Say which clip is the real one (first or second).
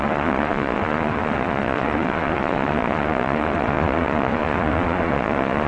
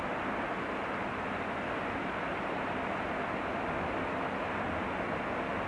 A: second